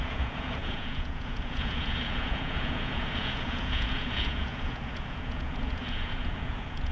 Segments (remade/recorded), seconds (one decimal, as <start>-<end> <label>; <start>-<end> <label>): 0.0-6.9 remade